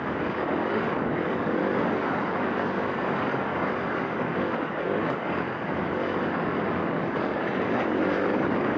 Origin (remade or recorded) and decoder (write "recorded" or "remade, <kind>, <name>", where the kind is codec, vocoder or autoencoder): remade, codec, DAC